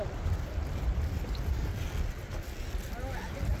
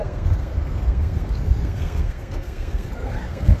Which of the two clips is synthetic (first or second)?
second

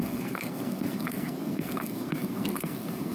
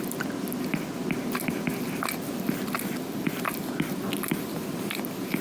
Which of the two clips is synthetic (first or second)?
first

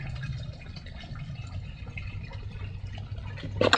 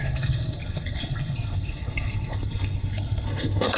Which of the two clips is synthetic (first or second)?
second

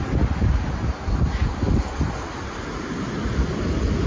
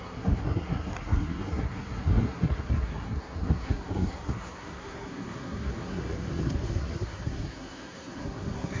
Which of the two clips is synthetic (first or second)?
second